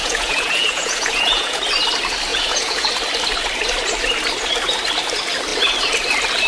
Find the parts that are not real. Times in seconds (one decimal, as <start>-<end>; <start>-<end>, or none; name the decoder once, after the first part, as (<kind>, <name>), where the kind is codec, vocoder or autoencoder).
0.0-1.6 (vocoder, Vocos); 2.3-2.9